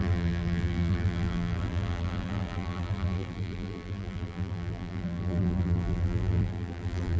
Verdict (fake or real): fake